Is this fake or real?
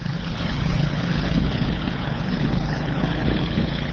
fake